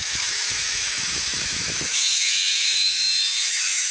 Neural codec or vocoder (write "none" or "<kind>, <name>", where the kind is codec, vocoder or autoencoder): autoencoder, DAC-VAE